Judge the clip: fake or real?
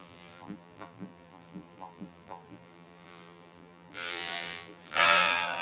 fake